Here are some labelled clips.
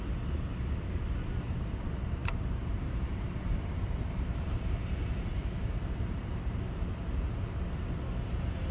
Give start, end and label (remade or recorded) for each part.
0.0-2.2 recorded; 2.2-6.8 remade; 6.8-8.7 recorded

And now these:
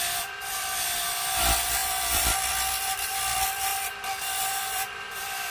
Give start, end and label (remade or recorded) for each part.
0.0-5.5 remade

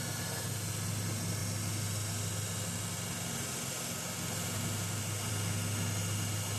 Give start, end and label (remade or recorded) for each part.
0.0-6.6 recorded

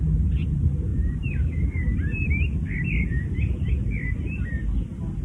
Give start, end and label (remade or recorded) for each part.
0.0-0.9 recorded; 0.9-3.7 remade; 3.7-5.2 recorded

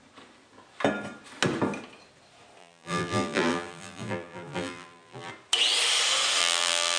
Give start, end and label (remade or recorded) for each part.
0.0-2.6 recorded; 2.6-5.3 remade; 5.3-6.4 recorded; 6.4-7.0 remade

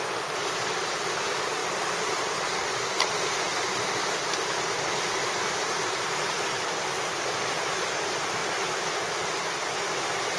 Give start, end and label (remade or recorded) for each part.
0.0-8.4 remade; 8.4-9.1 recorded; 9.1-10.4 remade